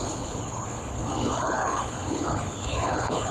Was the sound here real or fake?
fake